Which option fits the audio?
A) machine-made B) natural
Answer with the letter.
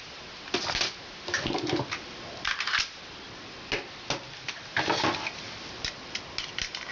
B